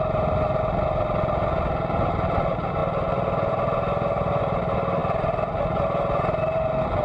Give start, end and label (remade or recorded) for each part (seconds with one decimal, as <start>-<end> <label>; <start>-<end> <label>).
0.0-7.0 recorded